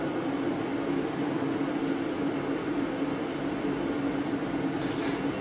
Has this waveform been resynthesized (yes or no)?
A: no